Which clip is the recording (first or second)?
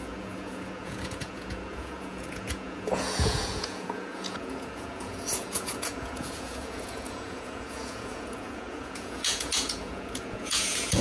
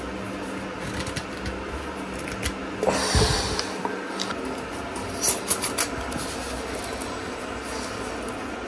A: second